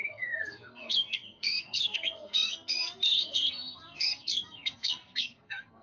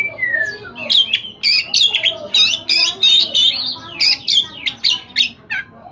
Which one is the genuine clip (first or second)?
second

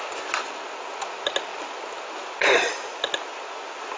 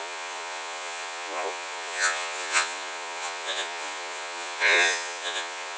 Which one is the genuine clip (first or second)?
first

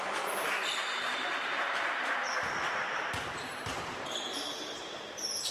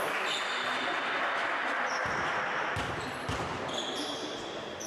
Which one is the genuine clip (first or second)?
second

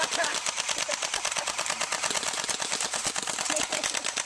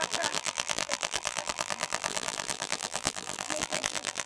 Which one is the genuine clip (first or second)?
first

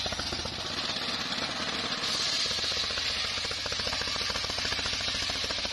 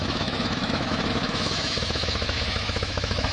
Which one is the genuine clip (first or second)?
first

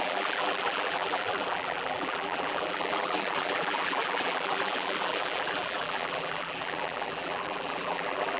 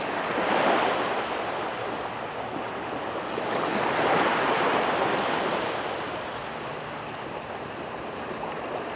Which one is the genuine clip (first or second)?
second